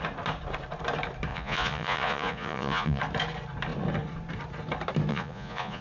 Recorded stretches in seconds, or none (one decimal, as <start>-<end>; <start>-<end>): 0.0-1.3; 3.0-5.1

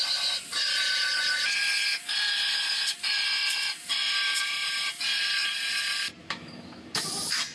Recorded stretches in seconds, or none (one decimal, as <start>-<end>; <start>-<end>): 0.0-6.2; 7.1-7.5

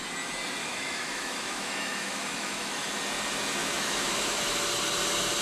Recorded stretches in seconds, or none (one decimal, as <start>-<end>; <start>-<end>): 0.0-0.6; 2.9-3.6; 4.4-5.4

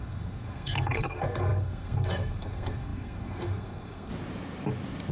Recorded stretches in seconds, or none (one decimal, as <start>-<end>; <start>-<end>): 4.1-5.1

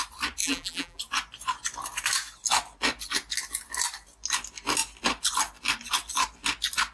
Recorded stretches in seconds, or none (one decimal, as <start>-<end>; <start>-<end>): 0.0-0.4; 1.0-6.9

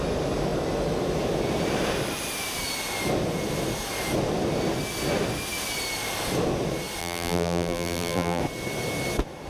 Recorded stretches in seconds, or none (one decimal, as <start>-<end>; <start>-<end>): 0.0-7.0; 8.4-9.5

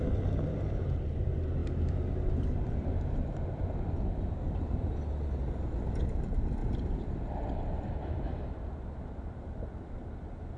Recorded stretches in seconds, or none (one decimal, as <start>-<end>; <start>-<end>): 0.0-1.6; 4.6-6.6; 9.7-10.6

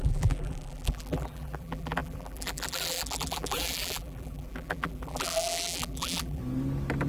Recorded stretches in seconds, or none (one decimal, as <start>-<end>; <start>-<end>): 6.4-7.1